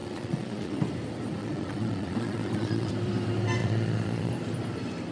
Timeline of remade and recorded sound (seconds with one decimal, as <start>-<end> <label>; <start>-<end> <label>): 0.0-0.8 remade; 0.8-1.4 recorded; 1.4-2.9 remade; 2.9-3.6 recorded; 3.6-4.3 remade; 4.3-5.1 recorded